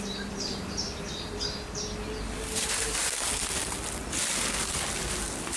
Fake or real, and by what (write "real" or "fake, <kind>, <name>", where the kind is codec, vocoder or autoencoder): real